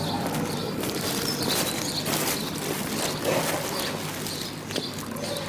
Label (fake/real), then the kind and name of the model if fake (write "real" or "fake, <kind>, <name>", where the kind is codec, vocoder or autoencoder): real